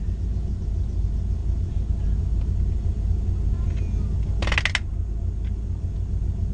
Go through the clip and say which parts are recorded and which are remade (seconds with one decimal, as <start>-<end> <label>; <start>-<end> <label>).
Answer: 0.0-6.5 recorded

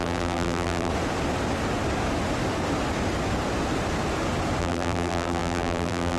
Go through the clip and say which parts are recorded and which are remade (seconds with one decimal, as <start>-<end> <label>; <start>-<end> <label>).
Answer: 0.0-0.9 remade; 0.9-4.6 recorded; 4.6-6.2 remade

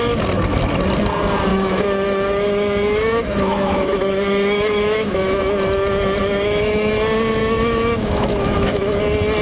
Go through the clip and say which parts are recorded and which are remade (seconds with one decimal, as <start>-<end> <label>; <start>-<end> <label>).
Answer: 0.0-1.5 recorded; 1.5-5.4 remade; 5.4-6.2 recorded; 6.2-6.9 remade; 6.9-7.4 recorded; 7.4-9.0 remade; 9.0-9.4 recorded

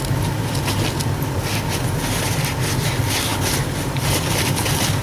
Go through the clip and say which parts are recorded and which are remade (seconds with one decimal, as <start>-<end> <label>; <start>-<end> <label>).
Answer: 0.0-5.0 recorded

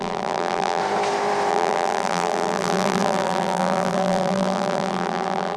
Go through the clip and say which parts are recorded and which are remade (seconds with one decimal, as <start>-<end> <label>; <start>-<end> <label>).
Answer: 0.0-0.8 remade; 0.8-1.5 recorded; 1.5-5.6 remade

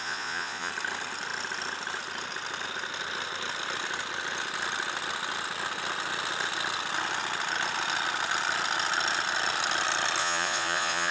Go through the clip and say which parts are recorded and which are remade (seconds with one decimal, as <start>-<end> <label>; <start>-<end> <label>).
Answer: 0.0-0.7 remade; 0.7-10.2 recorded; 10.2-11.1 remade

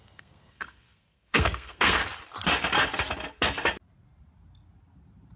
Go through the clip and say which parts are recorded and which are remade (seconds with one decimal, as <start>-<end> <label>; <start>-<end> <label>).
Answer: 0.0-2.0 remade; 2.0-5.4 recorded